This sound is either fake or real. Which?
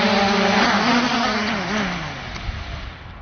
real